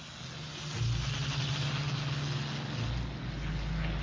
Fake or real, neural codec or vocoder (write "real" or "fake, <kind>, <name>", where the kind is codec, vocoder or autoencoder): real